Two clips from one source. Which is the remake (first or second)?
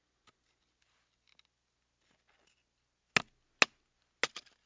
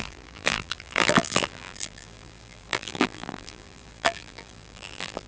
second